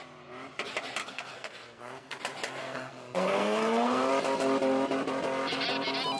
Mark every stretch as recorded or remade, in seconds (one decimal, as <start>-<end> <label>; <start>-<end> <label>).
0.0-1.0 recorded; 1.0-2.2 remade; 2.2-2.6 recorded; 2.6-4.1 remade; 4.1-6.2 recorded